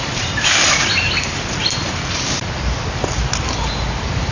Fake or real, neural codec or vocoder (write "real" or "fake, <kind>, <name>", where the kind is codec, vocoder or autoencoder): real